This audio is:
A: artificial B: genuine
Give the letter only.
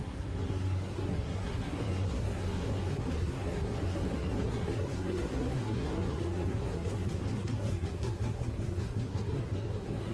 A